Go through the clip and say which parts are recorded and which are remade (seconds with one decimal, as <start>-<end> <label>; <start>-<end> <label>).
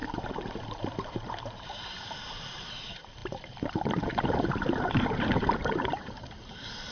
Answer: 0.0-6.9 remade